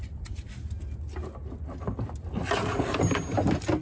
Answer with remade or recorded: recorded